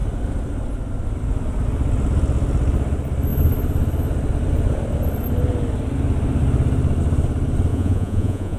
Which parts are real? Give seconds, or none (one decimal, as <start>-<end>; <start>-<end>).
0.0-7.7